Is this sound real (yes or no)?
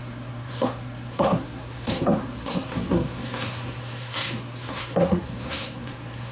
no